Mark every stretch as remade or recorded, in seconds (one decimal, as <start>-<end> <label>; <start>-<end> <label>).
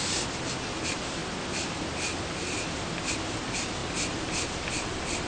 0.0-5.3 recorded